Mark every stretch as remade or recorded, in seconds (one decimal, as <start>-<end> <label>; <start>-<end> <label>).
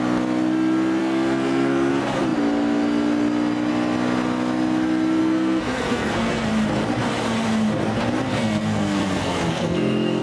0.0-1.0 recorded; 1.0-1.9 remade; 1.9-5.2 recorded; 5.2-6.5 remade; 6.5-8.3 recorded; 8.3-10.2 remade